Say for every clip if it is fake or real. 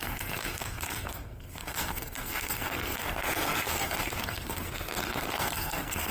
fake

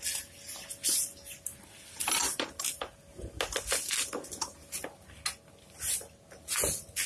real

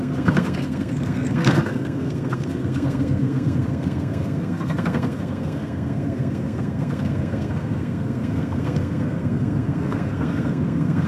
fake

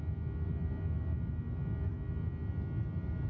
real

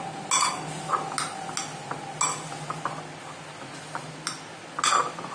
real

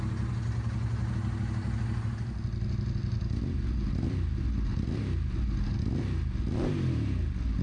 real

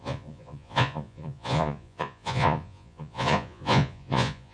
fake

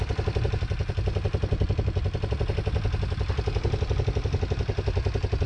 real